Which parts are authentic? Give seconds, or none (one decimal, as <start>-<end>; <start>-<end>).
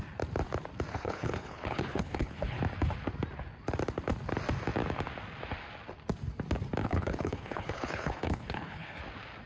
0.0-0.9; 2.6-6.8; 9.0-9.5